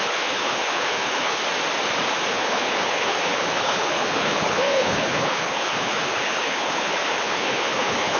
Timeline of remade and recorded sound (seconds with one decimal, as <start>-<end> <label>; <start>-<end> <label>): 0.0-1.4 remade; 1.4-2.3 recorded; 2.3-8.2 remade